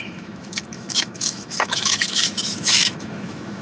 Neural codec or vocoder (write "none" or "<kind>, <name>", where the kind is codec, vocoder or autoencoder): autoencoder, DAC-VAE